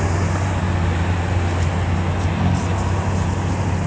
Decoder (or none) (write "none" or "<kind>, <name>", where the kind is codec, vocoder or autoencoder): none